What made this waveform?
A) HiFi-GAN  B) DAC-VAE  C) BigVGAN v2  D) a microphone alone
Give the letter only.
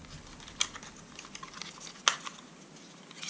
D